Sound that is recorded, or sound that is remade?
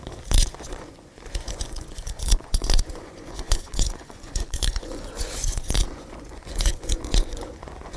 remade